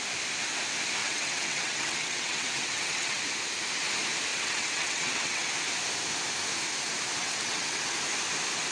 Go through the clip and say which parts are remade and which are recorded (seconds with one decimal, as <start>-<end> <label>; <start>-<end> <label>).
0.0-1.0 recorded; 1.0-3.2 remade; 3.2-4.3 recorded; 4.3-5.5 remade; 5.5-7.2 recorded; 7.2-7.9 remade; 7.9-8.7 recorded

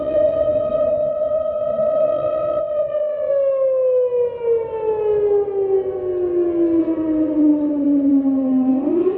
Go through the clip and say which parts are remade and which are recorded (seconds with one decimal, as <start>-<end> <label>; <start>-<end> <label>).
0.0-3.3 remade; 3.3-6.8 recorded; 6.8-9.2 remade

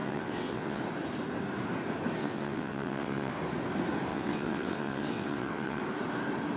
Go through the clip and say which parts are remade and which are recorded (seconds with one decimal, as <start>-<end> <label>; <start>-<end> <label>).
0.0-0.8 remade; 0.8-2.2 recorded; 2.2-3.3 remade; 3.3-4.1 recorded; 4.1-5.8 remade; 5.8-6.6 recorded

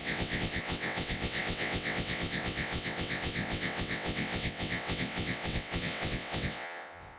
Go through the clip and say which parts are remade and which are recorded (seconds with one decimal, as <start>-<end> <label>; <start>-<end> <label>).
0.0-7.2 remade

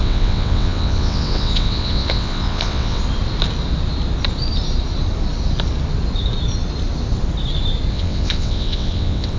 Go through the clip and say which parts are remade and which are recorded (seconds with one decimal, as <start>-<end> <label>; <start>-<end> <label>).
0.0-3.0 remade; 3.0-7.9 recorded; 7.9-9.4 remade

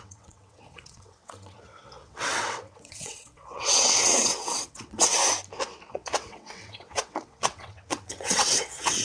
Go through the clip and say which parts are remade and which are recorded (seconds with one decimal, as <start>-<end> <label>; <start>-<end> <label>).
0.0-5.2 remade; 5.2-5.9 recorded; 5.9-9.0 remade